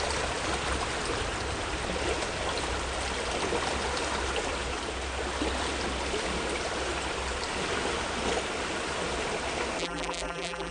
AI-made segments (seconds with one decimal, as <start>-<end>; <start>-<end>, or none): 9.8-10.7